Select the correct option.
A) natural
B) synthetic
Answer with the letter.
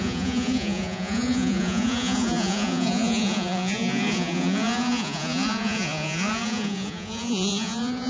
B